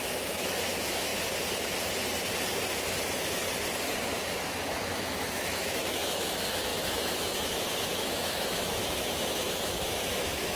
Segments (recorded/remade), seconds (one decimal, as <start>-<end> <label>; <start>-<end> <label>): 0.0-1.1 remade; 1.1-4.0 recorded; 4.0-10.6 remade